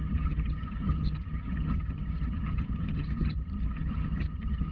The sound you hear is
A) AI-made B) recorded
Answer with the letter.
A